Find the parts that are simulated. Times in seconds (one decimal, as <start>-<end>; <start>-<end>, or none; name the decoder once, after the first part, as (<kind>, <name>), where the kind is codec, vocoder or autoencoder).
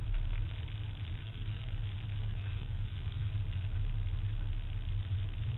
1.2-1.8 (codec, SNAC); 2.2-3.3